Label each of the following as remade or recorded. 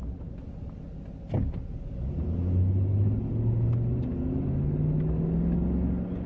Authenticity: recorded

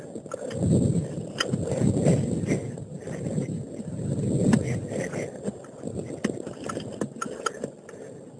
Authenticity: recorded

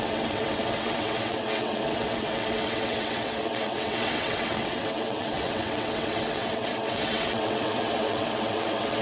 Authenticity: remade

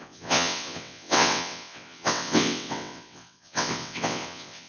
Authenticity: remade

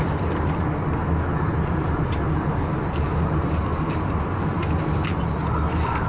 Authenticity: recorded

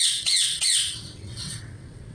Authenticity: remade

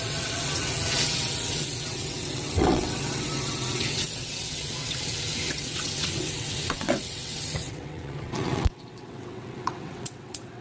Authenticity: remade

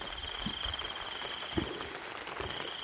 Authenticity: recorded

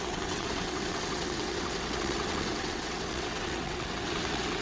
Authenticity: remade